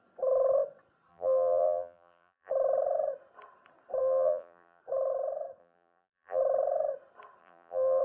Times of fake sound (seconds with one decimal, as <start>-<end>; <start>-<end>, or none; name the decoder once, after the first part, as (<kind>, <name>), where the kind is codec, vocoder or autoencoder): 1.1-2.5 (vocoder, BigVGAN v2); 4.0-4.8; 5.6-6.4; 7.4-8.0